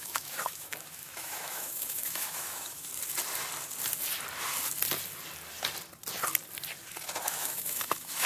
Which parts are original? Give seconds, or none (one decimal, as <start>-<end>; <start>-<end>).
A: 2.9-7.2